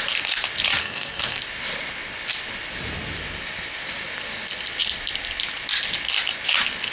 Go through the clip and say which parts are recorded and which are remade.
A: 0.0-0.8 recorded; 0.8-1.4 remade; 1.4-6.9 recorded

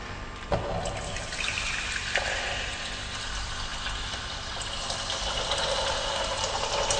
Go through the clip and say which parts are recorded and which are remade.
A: 0.0-7.0 recorded

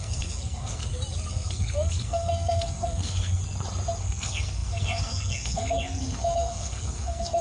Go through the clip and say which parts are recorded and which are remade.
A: 0.0-0.8 remade; 0.8-1.3 recorded; 1.3-3.4 remade; 3.4-4.0 recorded; 4.0-7.4 remade